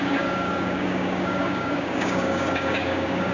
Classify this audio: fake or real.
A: fake